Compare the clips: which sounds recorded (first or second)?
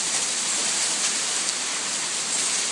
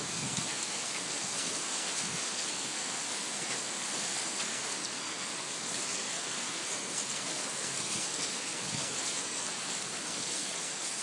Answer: first